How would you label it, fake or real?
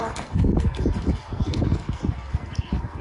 fake